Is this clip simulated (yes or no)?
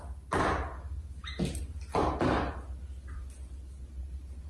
no